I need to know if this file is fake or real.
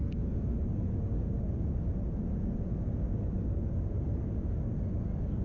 real